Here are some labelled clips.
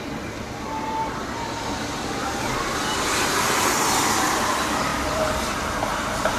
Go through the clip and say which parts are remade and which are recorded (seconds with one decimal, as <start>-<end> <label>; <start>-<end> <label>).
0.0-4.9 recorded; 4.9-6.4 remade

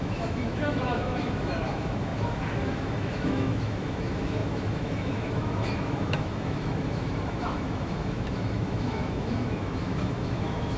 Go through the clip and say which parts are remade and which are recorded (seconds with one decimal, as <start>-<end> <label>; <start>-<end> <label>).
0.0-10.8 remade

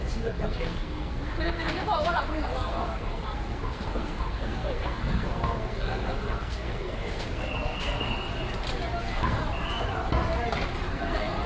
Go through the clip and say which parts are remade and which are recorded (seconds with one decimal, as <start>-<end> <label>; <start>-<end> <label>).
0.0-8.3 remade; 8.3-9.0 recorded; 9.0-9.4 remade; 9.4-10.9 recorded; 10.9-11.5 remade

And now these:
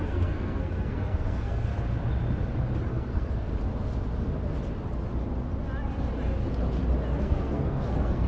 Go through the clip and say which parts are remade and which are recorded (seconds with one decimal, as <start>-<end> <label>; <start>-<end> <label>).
0.0-1.7 remade; 1.7-2.9 recorded; 2.9-3.5 remade; 3.5-7.2 recorded; 7.2-8.3 remade